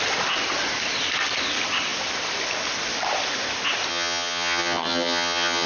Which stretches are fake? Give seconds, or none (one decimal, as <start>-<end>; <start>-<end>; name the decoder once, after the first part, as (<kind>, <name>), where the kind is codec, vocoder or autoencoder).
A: 3.9-5.7 (vocoder, HiFi-GAN)